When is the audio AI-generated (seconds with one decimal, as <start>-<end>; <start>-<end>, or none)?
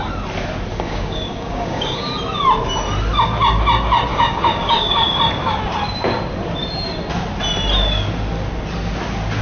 0.7-2.1; 4.1-5.2